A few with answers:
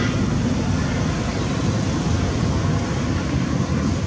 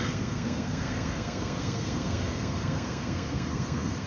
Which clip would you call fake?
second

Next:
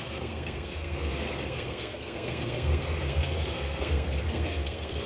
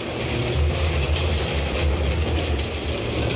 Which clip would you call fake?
first